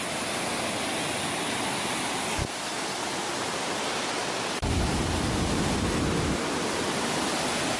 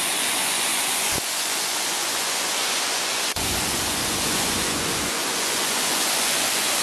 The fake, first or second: second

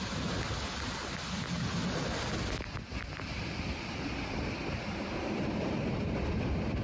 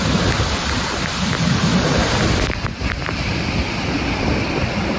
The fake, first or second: second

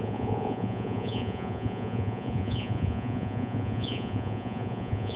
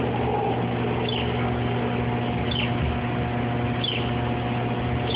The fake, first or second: first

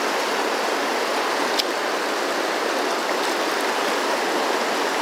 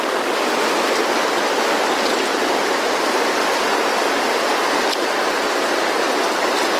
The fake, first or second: second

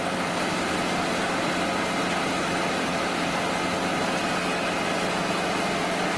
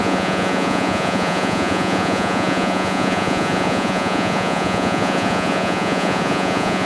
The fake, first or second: second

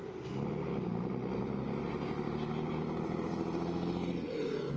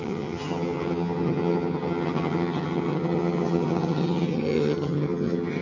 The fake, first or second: second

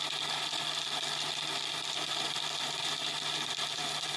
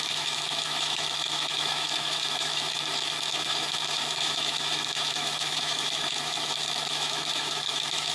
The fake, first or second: second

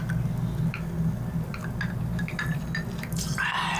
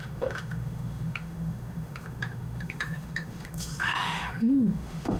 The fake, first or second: second